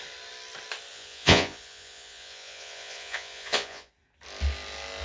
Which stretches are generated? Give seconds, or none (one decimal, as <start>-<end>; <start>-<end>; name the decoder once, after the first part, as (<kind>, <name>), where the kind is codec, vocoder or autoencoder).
0.9-3.9 (vocoder, Vocos)